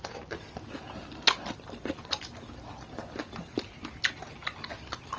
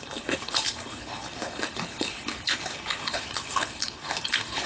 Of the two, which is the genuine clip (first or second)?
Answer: first